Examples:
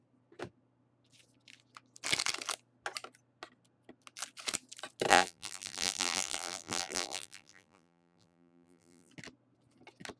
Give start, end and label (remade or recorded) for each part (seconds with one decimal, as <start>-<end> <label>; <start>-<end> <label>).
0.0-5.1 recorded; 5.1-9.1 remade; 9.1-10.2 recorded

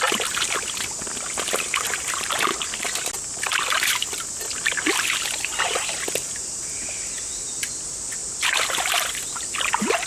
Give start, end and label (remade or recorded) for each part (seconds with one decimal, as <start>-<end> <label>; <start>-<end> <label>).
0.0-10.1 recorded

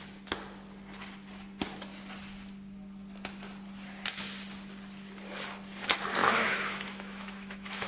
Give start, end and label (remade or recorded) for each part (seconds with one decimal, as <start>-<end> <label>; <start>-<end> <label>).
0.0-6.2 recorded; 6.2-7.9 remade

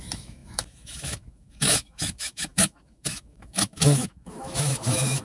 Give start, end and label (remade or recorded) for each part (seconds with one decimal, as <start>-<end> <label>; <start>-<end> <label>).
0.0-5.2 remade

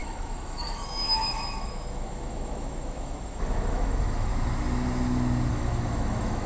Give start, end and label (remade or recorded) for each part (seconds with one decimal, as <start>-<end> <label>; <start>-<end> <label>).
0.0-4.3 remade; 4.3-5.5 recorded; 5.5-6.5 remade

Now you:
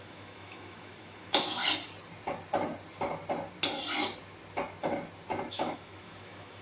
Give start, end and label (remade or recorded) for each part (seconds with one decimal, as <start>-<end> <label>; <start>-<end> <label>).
0.0-1.6 remade; 1.6-5.5 recorded; 5.5-6.6 remade

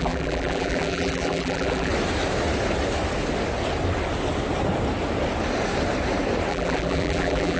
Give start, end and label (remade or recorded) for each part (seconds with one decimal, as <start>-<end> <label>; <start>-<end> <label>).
0.0-1.9 remade; 1.9-6.5 recorded; 6.5-7.6 remade